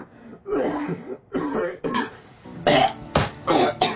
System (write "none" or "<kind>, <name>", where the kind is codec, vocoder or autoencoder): none